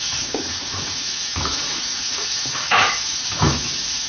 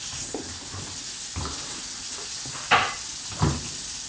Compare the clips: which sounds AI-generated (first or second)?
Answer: first